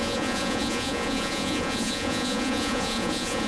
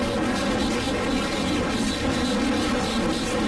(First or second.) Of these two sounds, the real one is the second